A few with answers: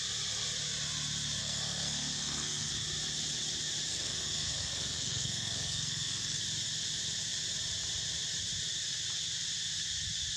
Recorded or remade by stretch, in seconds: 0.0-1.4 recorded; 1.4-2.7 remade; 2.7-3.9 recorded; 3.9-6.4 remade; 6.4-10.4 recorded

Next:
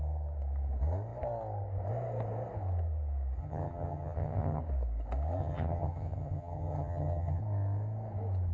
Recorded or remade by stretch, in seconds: 0.0-3.4 recorded; 3.4-4.6 remade; 4.6-5.4 recorded; 5.4-7.4 remade; 7.4-8.5 recorded

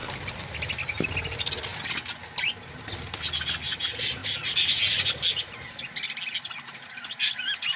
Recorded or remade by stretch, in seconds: 0.0-7.8 recorded

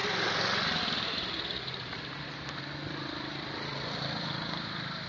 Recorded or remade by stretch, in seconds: 0.0-3.7 remade; 3.7-4.2 recorded; 4.2-5.1 remade